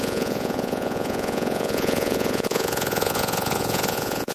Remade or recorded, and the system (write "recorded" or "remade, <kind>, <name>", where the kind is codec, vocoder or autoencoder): remade, vocoder, Vocos